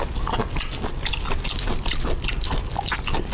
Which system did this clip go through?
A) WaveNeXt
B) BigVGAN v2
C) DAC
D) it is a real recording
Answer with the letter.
D